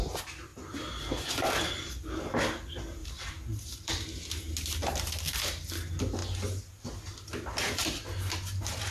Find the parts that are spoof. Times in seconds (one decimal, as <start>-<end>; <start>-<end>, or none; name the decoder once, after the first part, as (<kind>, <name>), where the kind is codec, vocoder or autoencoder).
3.0-3.9 (vocoder, BigVGAN v2)